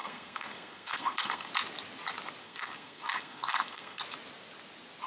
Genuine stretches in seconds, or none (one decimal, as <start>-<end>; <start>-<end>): 1.5-2.4; 4.0-5.1